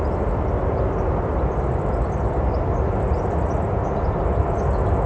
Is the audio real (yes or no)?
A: yes